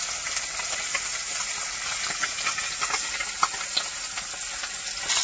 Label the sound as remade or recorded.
recorded